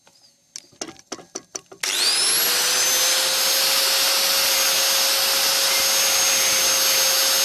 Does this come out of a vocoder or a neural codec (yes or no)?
no